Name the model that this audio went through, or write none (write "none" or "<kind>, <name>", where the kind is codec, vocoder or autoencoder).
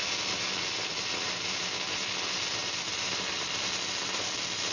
none